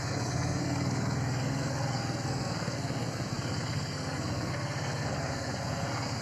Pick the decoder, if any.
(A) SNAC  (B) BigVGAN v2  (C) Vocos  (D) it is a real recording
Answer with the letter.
A